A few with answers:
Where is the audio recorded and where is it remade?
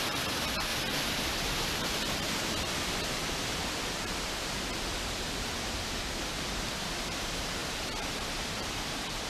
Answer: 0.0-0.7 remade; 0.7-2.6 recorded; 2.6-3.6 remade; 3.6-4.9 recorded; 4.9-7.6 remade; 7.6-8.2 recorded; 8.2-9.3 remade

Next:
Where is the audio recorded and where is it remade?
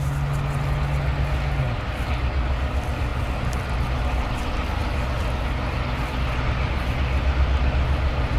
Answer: 0.0-8.4 recorded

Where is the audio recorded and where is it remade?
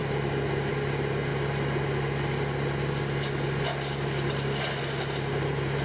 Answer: 0.0-1.3 remade; 1.3-4.8 recorded; 4.8-5.8 remade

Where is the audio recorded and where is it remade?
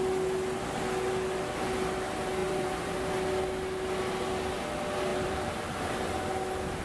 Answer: 0.0-2.4 recorded; 2.4-3.1 remade; 3.1-5.1 recorded; 5.1-6.0 remade; 6.0-6.8 recorded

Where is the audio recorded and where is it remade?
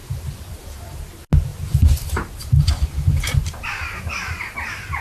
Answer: 0.0-1.0 remade; 1.0-1.5 recorded; 1.5-4.5 remade; 4.5-5.0 recorded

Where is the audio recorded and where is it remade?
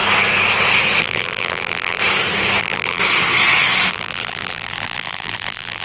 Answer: 0.0-1.0 recorded; 1.0-2.0 remade; 2.0-2.6 recorded; 2.6-3.0 remade; 3.0-3.9 recorded; 3.9-5.8 remade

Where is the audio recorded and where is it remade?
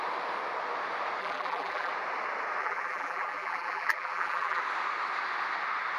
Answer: 0.0-1.2 recorded; 1.2-1.9 remade; 1.9-2.6 recorded; 2.6-4.6 remade; 4.6-6.0 recorded